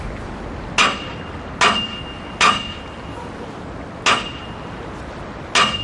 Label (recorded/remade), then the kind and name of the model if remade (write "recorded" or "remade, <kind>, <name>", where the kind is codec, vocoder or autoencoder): recorded